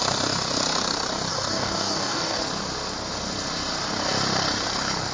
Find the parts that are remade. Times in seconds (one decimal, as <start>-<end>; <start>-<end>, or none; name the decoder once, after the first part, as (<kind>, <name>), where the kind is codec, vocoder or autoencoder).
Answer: 1.3-2.4 (codec, DAC)